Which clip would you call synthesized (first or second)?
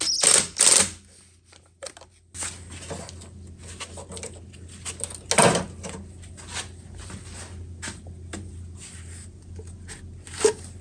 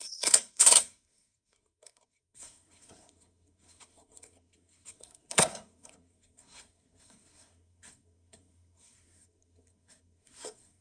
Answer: second